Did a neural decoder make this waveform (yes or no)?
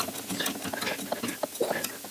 no